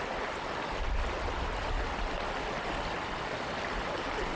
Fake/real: real